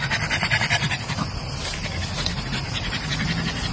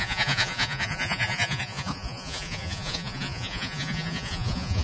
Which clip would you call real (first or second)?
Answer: first